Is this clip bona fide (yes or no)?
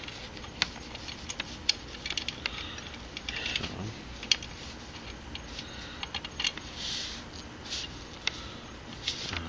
yes